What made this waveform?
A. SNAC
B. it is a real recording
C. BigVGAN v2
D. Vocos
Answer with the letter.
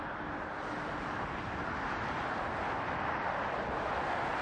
B